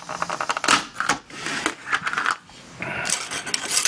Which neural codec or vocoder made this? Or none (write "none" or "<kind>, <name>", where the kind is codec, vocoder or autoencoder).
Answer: none